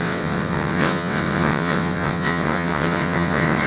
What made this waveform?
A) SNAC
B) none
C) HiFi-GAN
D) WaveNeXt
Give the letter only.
D